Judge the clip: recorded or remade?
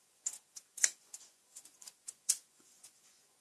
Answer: remade